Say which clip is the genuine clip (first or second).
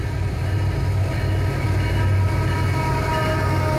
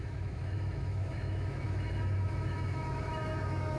first